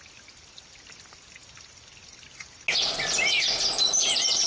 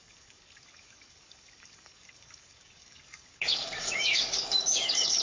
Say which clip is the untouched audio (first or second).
first